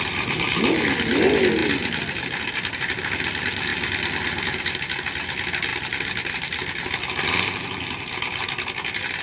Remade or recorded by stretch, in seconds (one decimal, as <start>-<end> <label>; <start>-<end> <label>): 0.0-1.6 recorded; 1.6-2.4 remade; 2.4-3.7 recorded; 3.7-4.6 remade; 4.6-5.7 recorded; 5.7-8.0 remade; 8.0-9.2 recorded